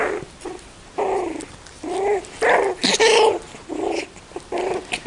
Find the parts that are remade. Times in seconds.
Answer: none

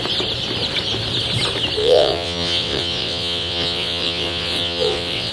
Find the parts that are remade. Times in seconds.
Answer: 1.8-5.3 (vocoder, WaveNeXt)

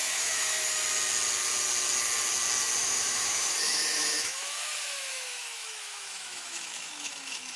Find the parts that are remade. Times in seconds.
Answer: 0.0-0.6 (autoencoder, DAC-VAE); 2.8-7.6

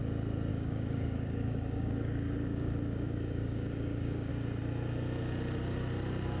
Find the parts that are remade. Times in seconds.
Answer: 0.5-4.3 (codec, DAC)

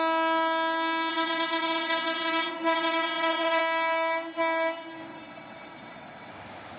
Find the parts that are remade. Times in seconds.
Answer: 1.1-3.6 (vocoder, WaveNeXt); 5.1-6.3

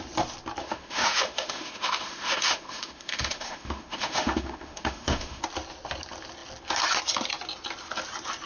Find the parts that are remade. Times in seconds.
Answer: 0.6-5.4 (autoencoder, DAC-VAE)